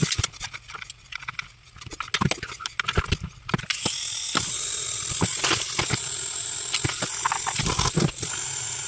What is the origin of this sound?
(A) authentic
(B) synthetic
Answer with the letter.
A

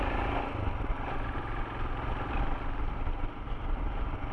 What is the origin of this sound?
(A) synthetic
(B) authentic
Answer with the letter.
A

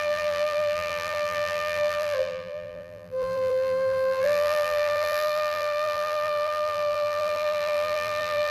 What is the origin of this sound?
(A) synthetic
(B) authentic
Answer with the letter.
A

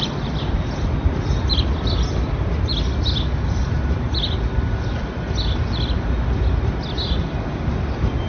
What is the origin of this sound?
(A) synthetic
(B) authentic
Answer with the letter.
B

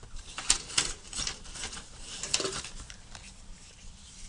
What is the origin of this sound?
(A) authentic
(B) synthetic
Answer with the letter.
B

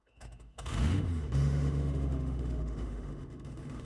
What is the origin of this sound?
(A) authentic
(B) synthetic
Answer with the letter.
B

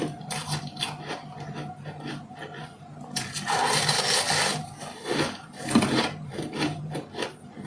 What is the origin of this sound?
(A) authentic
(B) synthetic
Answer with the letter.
A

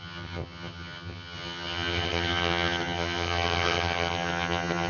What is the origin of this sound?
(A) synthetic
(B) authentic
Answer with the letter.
A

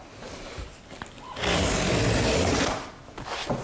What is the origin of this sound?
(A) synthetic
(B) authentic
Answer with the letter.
B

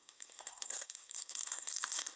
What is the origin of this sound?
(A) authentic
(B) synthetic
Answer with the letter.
B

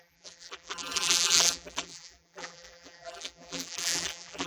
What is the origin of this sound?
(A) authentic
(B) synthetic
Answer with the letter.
B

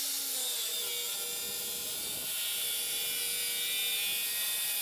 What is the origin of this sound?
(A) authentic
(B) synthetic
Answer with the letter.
A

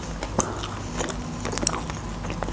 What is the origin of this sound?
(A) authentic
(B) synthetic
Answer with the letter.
A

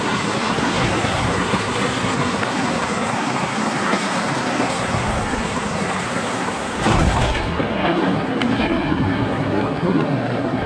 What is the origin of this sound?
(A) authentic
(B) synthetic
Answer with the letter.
B